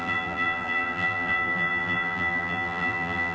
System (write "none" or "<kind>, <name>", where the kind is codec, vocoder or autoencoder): vocoder, BigVGAN v2